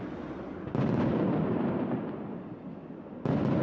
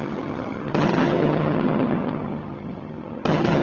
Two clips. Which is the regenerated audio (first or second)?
second